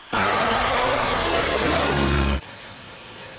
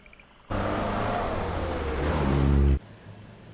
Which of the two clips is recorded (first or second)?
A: second